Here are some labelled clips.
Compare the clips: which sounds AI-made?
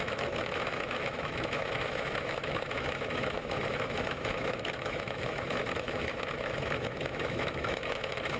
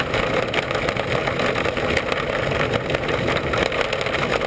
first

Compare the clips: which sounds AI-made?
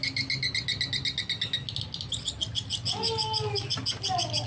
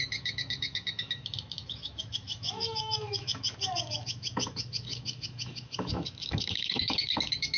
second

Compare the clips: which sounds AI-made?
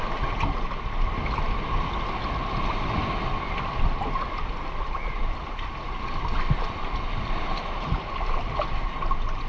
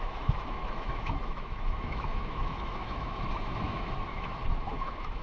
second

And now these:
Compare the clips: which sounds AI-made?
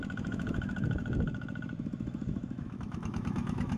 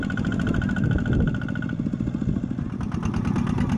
first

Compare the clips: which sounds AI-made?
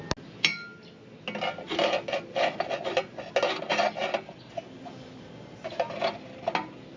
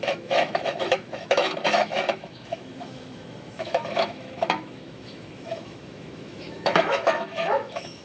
second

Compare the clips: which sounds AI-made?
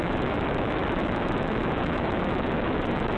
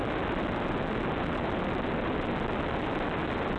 first